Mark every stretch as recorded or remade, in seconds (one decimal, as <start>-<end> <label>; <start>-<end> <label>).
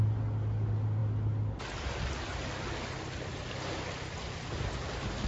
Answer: 0.0-5.3 recorded